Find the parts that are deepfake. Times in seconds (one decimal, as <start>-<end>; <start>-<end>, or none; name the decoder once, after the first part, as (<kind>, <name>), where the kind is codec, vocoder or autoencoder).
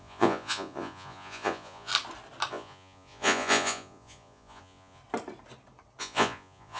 0.0-1.9 (vocoder, Vocos); 2.5-5.0; 6.0-6.8